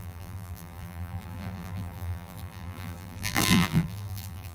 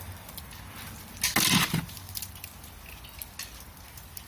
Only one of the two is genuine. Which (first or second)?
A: second